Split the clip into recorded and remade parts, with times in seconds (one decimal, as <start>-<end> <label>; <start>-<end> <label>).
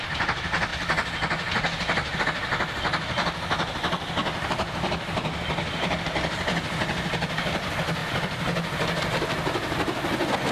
0.0-4.2 recorded; 4.2-6.3 remade; 6.3-10.5 recorded